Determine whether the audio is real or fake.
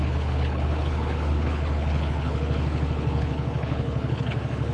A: fake